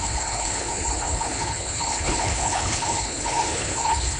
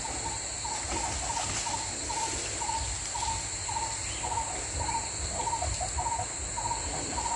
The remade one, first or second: first